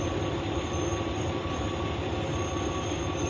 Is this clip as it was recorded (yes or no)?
yes